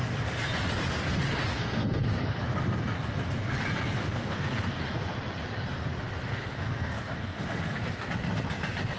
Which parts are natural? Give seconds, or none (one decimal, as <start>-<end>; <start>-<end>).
0.0-1.5; 2.4-4.0; 4.8-6.3; 8.1-9.0